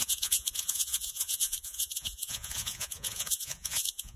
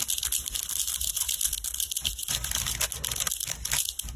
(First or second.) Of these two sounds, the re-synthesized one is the first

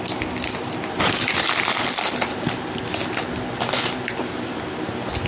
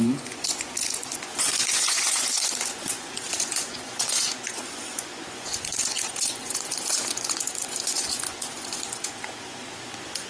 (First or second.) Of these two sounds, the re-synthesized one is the second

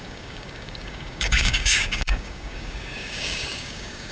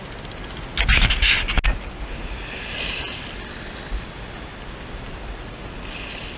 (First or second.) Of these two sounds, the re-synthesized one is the first